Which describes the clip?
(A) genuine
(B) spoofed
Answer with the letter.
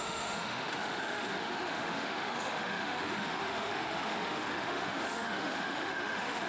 B